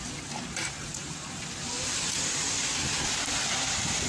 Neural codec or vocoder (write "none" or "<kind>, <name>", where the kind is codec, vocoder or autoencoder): none